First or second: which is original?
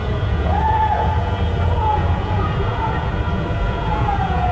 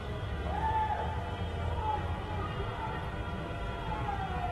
second